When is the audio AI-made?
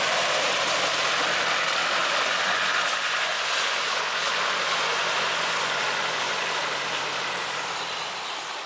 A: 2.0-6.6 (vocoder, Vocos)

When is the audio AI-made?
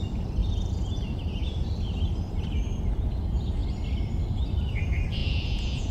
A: 5.2-5.9 (vocoder, Vocos)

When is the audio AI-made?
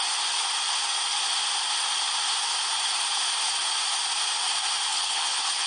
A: 4.9-5.7 (codec, HILCodec)